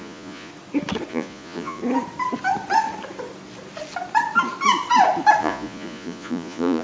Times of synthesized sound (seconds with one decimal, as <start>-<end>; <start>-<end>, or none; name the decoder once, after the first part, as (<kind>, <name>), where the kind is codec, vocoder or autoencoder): 0.0-0.5 (vocoder, Vocos); 1.1-1.8; 5.4-6.8